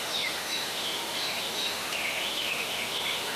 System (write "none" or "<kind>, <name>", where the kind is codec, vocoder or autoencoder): autoencoder, DAC-VAE